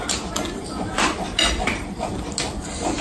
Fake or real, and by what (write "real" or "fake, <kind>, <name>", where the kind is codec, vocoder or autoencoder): real